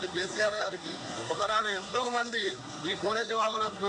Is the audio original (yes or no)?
no